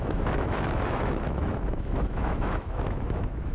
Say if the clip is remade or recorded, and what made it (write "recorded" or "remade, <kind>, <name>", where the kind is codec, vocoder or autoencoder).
remade, autoencoder, DAC-VAE